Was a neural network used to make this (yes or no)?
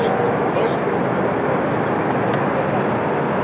no